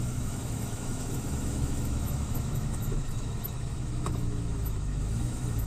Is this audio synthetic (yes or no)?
yes